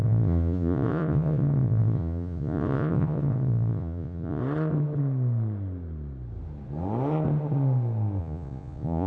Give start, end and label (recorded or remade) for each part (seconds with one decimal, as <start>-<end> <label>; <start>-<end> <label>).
0.0-4.4 remade; 4.4-8.2 recorded; 8.2-9.1 remade